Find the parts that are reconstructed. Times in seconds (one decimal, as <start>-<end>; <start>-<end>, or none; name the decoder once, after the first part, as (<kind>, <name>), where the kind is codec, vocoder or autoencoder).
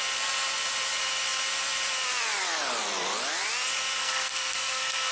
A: 4.0-5.1 (codec, SNAC)